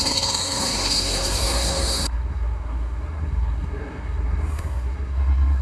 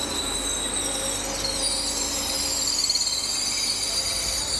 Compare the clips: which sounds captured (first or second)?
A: second